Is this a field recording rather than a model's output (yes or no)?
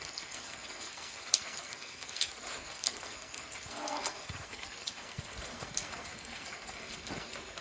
no